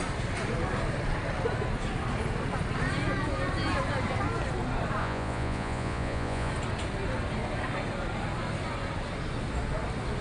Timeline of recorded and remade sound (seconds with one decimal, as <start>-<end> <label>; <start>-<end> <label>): 0.0-5.0 recorded; 5.0-6.5 remade; 6.5-10.2 recorded

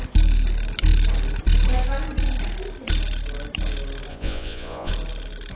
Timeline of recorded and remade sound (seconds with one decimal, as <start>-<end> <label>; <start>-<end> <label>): 0.0-4.1 recorded; 4.1-4.9 remade; 4.9-5.6 recorded

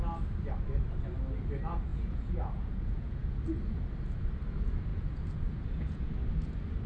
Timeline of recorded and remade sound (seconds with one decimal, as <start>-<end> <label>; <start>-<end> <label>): 0.0-1.9 recorded; 1.9-3.4 remade; 3.4-4.9 recorded; 4.9-6.1 remade; 6.1-6.9 recorded

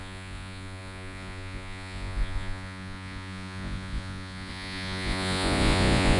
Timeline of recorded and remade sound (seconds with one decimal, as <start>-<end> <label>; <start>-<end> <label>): 0.0-6.2 remade

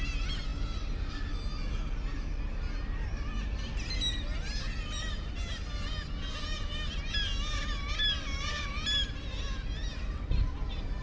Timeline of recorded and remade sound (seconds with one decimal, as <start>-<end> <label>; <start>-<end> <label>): 0.0-11.0 recorded

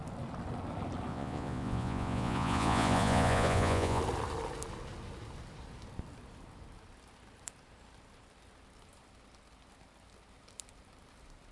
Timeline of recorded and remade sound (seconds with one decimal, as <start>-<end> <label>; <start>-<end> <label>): 0.0-1.1 recorded; 1.1-4.0 remade; 4.0-11.5 recorded